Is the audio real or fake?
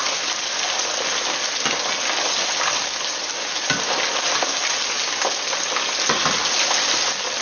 real